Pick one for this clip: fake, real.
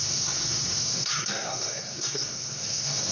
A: fake